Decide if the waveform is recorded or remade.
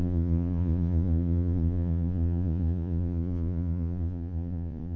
remade